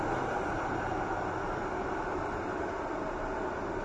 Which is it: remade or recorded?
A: recorded